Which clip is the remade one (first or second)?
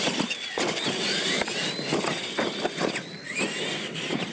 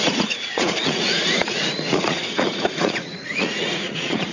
second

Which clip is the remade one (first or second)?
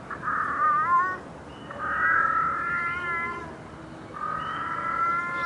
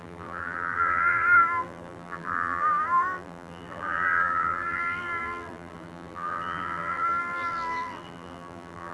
second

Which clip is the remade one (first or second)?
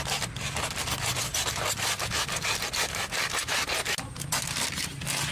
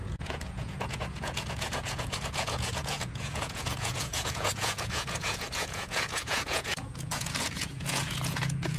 second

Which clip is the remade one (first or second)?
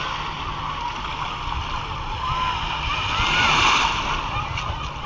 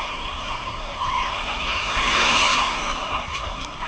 second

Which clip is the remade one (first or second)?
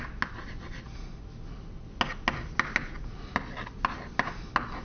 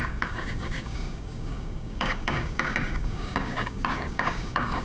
second